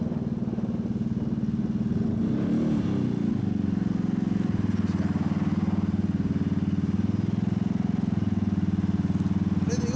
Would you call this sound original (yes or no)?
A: yes